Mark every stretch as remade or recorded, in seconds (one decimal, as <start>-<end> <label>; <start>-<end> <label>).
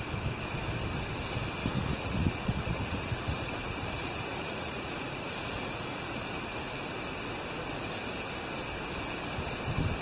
0.0-1.6 recorded; 1.6-6.7 remade; 6.7-10.0 recorded